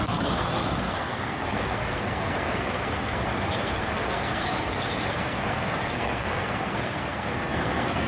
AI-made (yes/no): yes